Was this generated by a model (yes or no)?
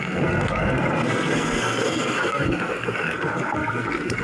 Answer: yes